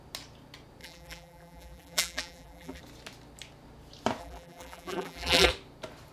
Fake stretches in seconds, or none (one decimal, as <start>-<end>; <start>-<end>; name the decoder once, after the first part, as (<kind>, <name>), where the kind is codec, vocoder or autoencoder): 0.8-2.8 (vocoder, BigVGAN v2); 4.2-5.5